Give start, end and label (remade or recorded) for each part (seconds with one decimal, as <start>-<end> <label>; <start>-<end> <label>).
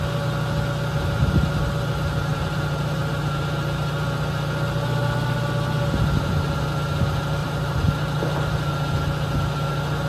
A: 0.0-2.3 recorded; 2.3-3.1 remade; 3.1-7.4 recorded; 7.4-8.2 remade; 8.2-10.1 recorded